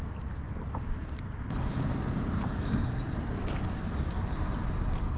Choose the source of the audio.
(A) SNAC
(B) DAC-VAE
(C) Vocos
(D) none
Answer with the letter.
D